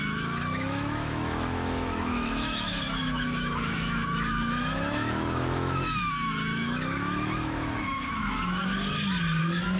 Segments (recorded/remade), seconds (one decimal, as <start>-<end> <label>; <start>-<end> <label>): 0.0-8.6 remade; 8.6-9.4 recorded; 9.4-9.8 remade